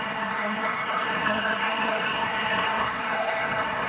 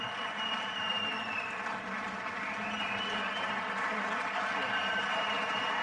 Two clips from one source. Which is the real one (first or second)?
second